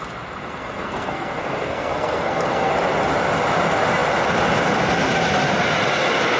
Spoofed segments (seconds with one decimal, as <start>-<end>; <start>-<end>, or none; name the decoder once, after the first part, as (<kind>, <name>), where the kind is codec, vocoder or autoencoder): 0.4-2.7 (codec, SNAC)

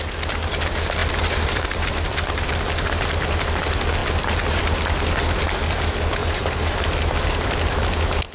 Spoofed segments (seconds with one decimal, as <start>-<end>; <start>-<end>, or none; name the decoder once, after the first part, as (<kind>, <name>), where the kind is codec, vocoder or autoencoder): 1.0-2.5 (vocoder, BigVGAN v2); 6.2-8.3

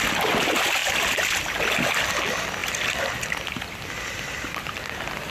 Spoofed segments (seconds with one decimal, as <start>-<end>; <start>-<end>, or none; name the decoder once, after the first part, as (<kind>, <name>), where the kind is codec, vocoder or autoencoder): 2.6-4.8 (vocoder, BigVGAN v2)

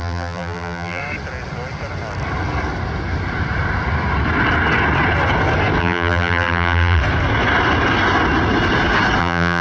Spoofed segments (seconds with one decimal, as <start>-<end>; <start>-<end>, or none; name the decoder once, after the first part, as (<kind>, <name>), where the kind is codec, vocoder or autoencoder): 0.0-1.0 (vocoder, BigVGAN v2); 5.8-7.0; 9.2-9.6

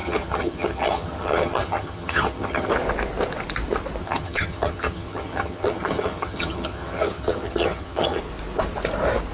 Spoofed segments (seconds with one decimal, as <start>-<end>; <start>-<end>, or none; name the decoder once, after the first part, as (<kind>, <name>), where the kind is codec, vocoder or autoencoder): 0.0-2.7 (vocoder, HiFi-GAN); 4.0-8.2